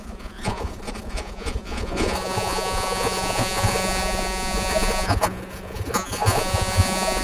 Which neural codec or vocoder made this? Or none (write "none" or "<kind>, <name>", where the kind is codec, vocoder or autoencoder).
vocoder, Vocos